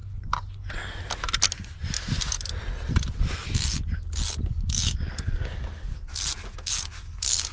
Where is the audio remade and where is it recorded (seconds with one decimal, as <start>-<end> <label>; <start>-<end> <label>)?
0.0-4.5 recorded; 4.5-6.1 remade; 6.1-6.7 recorded; 6.7-7.5 remade